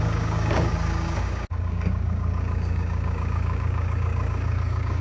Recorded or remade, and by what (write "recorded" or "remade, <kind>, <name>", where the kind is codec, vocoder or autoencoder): remade, codec, DAC